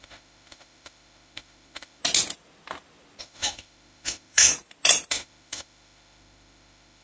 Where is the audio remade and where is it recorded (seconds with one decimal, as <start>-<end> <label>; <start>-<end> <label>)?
0.0-2.0 remade; 2.0-3.2 recorded; 3.2-4.5 remade; 4.5-5.1 recorded; 5.1-7.0 remade